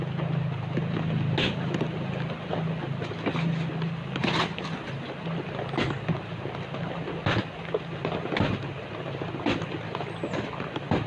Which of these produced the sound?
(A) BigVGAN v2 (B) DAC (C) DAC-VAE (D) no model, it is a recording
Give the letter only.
D